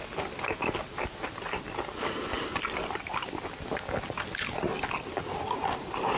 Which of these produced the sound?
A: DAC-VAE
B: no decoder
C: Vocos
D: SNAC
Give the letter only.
B